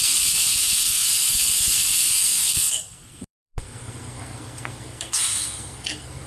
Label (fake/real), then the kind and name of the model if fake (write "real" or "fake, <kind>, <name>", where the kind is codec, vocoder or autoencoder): fake, codec, SNAC